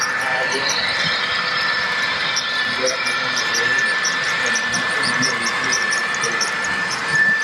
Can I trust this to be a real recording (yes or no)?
no